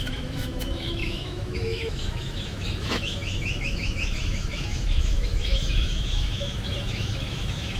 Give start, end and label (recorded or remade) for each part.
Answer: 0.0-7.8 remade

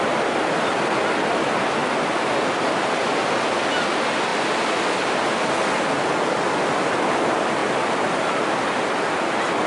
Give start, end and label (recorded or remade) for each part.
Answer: 0.0-9.7 recorded

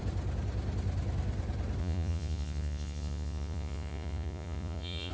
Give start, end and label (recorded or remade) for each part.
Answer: 0.0-1.8 recorded; 1.8-5.1 remade